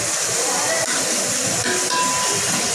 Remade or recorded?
recorded